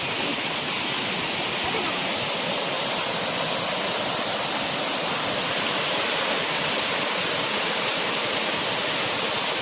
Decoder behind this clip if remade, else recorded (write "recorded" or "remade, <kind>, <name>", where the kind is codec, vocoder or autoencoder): recorded